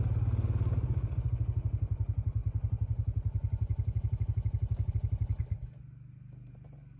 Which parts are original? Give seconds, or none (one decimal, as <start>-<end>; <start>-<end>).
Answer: 0.0-7.0